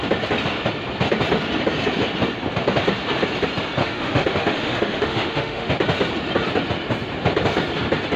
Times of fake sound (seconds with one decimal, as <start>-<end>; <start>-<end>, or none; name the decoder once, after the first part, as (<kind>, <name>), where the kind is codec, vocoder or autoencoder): 3.8-5.7 (autoencoder, DAC-VAE)